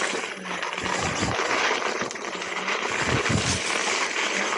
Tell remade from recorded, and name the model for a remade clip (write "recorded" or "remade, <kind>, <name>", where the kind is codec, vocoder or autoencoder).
recorded